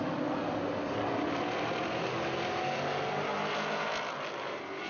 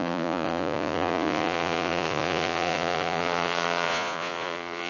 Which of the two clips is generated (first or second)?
second